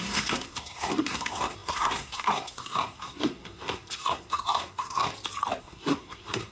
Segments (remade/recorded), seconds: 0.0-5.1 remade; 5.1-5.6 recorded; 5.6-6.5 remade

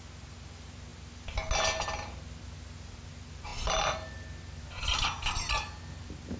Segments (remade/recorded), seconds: 0.0-6.4 recorded

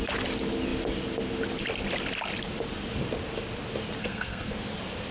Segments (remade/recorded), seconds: 0.0-4.0 recorded; 4.0-4.5 remade; 4.5-5.1 recorded